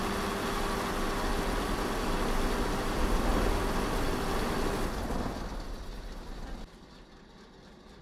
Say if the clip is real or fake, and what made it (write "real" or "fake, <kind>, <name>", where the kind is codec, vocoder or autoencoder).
real